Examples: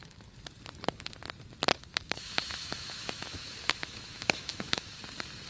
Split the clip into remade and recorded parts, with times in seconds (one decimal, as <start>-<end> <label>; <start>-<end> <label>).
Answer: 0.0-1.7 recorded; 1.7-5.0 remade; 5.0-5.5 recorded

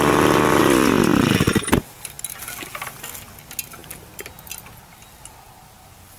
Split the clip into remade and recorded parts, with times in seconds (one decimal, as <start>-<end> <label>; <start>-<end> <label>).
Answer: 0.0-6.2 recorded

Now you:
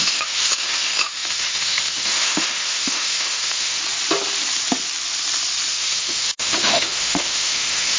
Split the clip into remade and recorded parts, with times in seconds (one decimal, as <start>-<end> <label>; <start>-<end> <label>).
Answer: 0.0-3.8 remade; 3.8-5.7 recorded; 5.7-8.0 remade

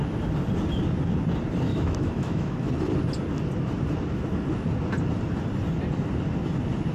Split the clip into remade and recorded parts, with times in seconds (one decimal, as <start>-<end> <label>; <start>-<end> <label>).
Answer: 0.0-1.7 recorded; 1.7-2.7 remade; 2.7-6.9 recorded